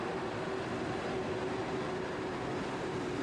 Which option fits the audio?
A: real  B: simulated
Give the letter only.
A